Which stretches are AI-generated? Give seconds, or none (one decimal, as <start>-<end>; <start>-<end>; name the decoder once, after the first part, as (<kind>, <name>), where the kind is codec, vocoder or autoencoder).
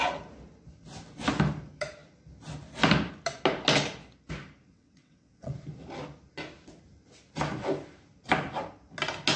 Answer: 4.7-5.5 (vocoder, WaveNeXt)